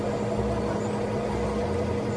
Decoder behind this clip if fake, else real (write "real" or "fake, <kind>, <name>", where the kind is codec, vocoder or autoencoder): real